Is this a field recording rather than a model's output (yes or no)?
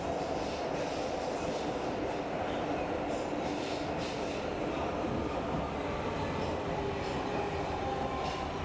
yes